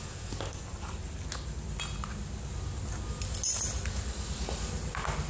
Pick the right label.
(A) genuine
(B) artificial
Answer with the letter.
A